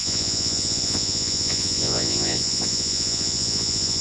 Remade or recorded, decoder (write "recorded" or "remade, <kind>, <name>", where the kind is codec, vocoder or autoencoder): remade, vocoder, Vocos